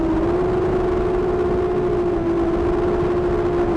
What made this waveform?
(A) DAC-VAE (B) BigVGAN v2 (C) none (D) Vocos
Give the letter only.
C